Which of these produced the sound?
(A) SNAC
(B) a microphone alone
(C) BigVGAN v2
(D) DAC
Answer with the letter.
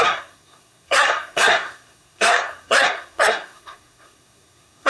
A